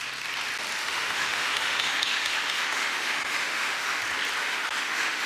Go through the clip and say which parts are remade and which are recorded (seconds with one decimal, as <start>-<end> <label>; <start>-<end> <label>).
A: 0.0-0.8 recorded; 0.8-4.0 remade; 4.0-4.4 recorded; 4.4-5.3 remade